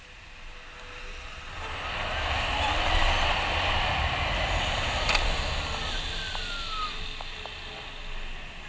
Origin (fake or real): real